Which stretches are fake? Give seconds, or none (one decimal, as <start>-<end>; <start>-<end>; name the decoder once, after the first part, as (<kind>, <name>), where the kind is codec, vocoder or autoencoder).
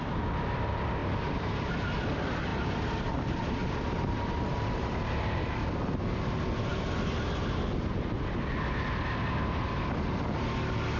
1.0-1.6 (vocoder, BigVGAN v2); 2.5-5.8